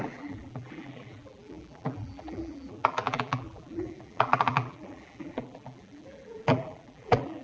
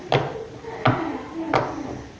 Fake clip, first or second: first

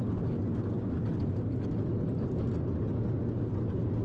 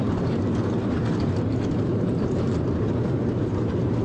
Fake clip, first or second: second